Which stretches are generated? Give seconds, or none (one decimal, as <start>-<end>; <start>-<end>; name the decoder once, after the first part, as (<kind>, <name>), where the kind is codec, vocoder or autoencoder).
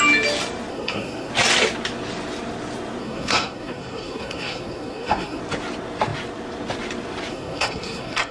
0.7-1.3 (codec, SNAC); 3.0-5.4; 7.3-8.3